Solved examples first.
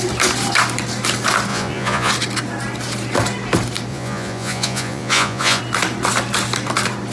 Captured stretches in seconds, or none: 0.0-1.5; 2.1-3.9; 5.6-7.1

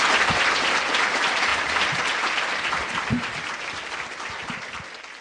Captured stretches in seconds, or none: 0.0-5.2